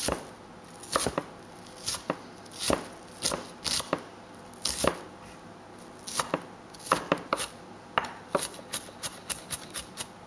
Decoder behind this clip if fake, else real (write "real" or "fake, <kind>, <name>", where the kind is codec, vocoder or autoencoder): real